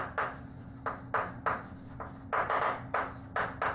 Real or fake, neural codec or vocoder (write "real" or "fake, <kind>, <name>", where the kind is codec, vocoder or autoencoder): real